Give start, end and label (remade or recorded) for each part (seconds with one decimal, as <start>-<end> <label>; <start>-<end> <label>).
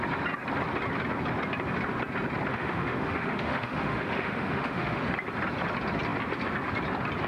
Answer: 0.0-2.5 recorded; 2.5-5.0 remade; 5.0-7.3 recorded